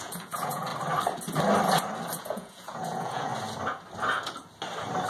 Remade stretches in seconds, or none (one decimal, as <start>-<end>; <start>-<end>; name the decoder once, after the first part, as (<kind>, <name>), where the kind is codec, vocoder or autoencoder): 0.0-0.7 (vocoder, Vocos); 2.2-3.3